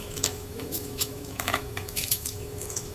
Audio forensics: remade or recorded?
remade